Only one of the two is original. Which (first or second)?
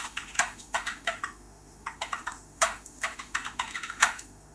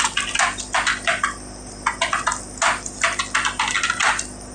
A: second